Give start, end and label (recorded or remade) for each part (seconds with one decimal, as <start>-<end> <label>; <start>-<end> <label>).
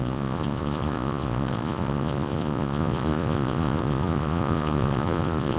0.0-5.6 remade